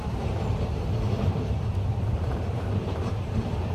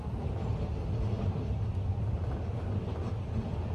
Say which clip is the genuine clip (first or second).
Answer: second